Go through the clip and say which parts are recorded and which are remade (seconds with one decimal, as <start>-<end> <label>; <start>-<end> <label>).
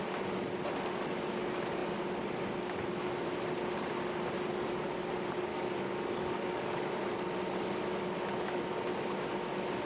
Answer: 0.0-5.5 recorded; 5.5-6.9 remade; 6.9-9.9 recorded